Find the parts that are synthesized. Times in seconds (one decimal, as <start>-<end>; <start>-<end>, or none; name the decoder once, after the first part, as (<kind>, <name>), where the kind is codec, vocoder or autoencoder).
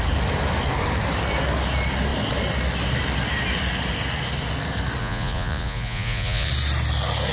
5.0-6.5 (vocoder, Vocos)